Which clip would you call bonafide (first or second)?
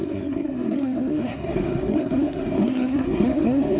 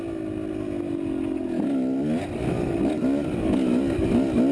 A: second